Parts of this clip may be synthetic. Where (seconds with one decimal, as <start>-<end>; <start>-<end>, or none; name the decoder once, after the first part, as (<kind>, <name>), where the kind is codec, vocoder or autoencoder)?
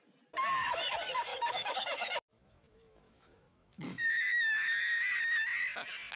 1.3-5.0 (autoencoder, DAC-VAE)